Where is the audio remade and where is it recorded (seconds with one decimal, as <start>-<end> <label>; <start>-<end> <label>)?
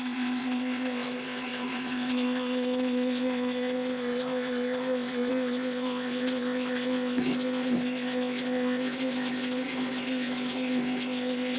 0.0-11.6 remade